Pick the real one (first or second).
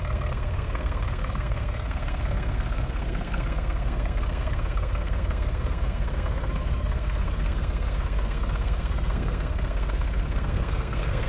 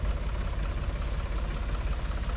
second